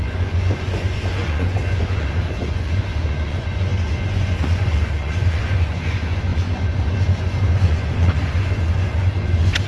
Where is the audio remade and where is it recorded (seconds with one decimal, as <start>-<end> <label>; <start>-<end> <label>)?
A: 0.0-9.7 remade